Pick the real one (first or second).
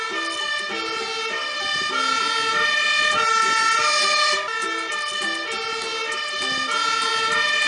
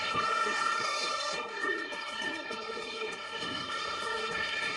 first